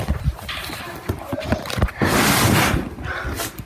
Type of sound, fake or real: real